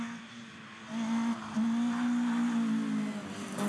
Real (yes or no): yes